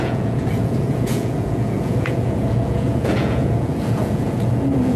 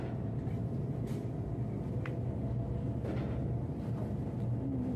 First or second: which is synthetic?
first